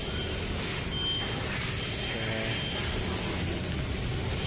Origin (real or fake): real